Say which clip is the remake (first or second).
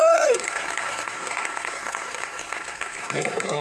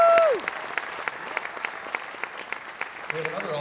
first